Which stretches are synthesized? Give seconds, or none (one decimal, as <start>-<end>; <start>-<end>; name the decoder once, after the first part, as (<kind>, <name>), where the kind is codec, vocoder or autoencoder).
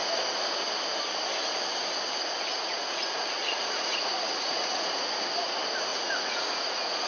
2.5-5.1 (vocoder, Vocos); 5.9-7.1